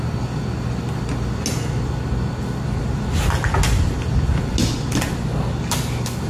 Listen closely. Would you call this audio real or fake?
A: real